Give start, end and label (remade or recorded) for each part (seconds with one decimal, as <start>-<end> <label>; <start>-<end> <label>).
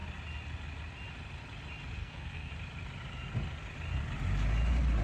0.0-2.0 recorded; 2.0-2.5 remade; 2.5-5.0 recorded